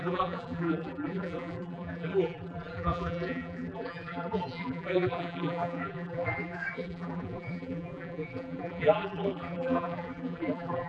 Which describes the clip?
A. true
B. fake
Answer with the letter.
B